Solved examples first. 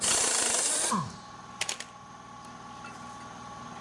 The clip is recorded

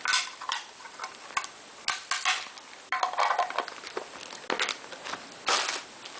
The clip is recorded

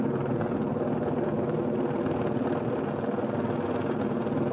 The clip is recorded